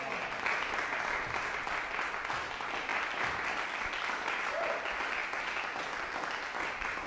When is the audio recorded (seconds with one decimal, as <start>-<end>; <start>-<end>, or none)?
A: 0.0-7.1